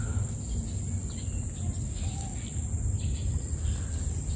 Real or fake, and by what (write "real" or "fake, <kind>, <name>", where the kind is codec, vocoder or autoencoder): real